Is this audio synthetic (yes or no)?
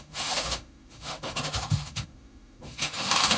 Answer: yes